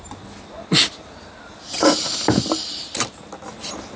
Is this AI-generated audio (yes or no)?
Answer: no